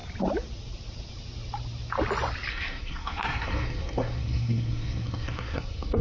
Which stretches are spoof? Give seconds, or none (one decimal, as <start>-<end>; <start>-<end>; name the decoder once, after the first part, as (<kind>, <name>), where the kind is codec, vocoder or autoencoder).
2.5-6.0 (codec, SNAC)